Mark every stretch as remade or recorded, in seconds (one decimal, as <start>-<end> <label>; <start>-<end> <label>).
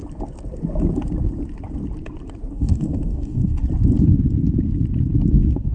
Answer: 0.0-2.5 recorded; 2.5-3.6 remade; 3.6-5.3 recorded; 5.3-5.7 remade